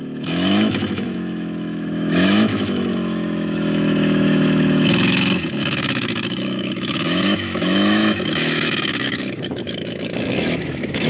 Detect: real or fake fake